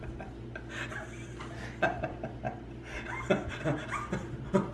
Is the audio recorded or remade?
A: recorded